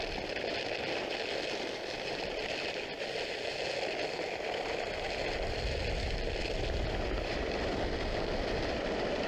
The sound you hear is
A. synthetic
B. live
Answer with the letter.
B